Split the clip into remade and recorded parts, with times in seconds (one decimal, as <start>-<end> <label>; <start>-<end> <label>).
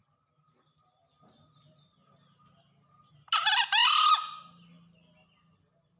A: 0.0-6.0 recorded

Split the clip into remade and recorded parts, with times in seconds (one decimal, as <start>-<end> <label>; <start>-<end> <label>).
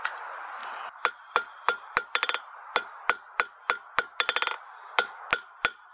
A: 0.0-5.9 recorded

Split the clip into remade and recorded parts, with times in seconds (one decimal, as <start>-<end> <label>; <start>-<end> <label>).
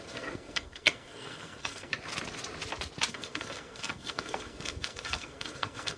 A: 0.0-1.9 remade; 1.9-3.1 recorded; 3.1-6.0 remade